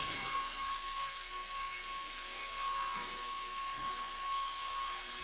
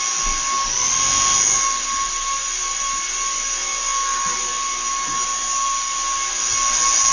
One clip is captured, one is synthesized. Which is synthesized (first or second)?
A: first